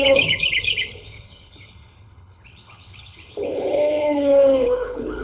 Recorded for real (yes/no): no